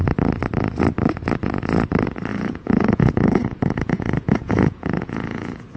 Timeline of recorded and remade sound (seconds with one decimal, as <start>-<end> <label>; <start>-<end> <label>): 0.0-2.3 recorded; 2.3-5.8 remade